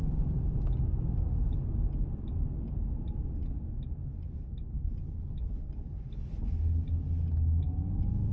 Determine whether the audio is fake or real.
real